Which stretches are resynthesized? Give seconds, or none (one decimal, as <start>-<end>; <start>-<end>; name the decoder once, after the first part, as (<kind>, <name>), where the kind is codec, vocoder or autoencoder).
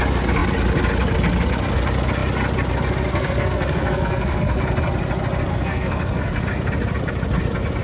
3.1-4.6 (codec, SNAC); 5.5-6.4